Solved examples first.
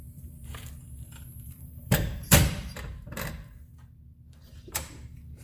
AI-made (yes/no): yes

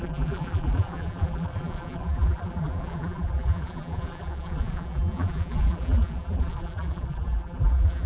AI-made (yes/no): yes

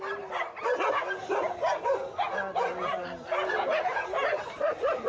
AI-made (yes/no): no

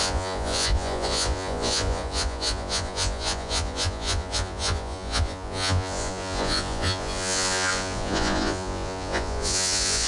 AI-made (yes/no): yes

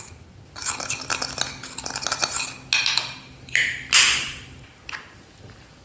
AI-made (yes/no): no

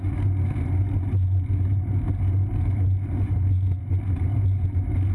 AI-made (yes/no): no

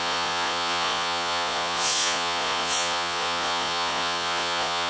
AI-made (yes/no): yes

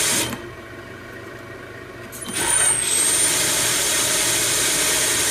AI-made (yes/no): no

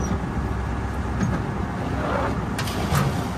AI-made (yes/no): no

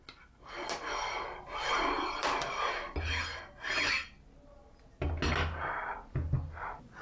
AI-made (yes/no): no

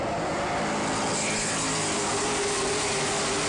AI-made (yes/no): no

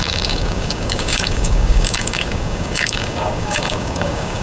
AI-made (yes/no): yes